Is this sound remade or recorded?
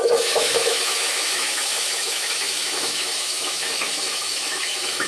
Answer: remade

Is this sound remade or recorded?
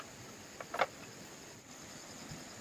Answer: recorded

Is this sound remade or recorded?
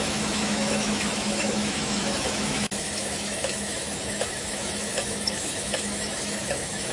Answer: remade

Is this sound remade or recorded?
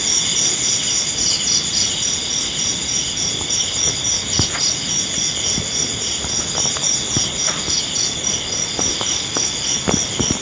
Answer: recorded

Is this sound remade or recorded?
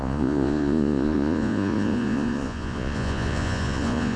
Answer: remade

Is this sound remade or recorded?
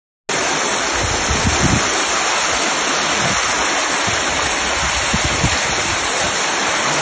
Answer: recorded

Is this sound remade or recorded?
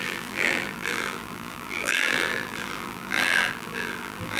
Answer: remade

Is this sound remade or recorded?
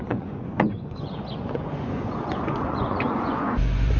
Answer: remade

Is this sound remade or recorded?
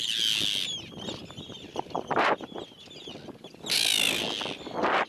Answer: recorded